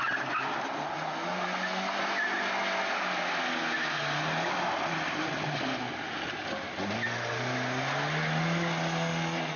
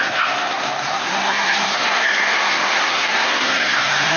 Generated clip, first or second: second